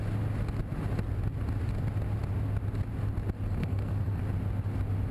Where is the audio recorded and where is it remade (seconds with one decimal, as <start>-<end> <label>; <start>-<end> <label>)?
0.0-3.6 recorded; 3.6-4.2 remade; 4.2-5.1 recorded